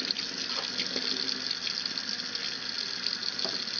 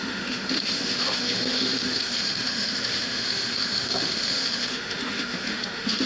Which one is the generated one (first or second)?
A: second